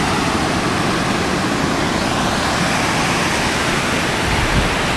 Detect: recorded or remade recorded